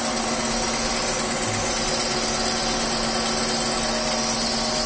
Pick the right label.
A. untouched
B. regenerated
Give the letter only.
A